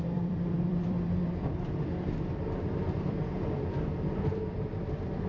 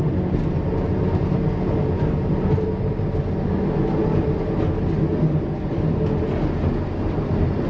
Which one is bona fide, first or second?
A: second